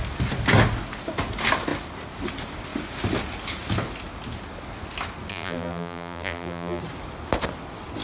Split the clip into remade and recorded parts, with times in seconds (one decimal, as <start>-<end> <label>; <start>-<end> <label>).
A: 0.0-5.3 recorded; 5.3-6.8 remade; 6.8-8.0 recorded